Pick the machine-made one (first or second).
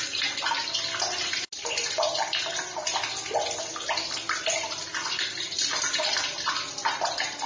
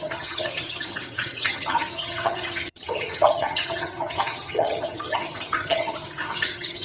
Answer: second